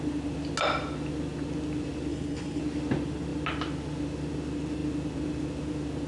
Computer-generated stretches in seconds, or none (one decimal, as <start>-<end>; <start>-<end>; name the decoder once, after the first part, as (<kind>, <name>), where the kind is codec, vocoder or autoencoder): 2.1-2.6 (codec, HILCodec)